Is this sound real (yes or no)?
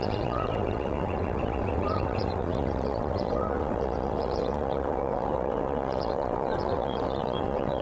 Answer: no